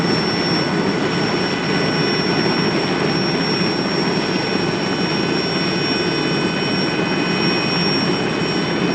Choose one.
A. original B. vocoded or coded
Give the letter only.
A